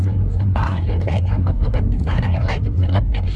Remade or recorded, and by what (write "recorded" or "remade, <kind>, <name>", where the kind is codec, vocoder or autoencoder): remade, codec, SNAC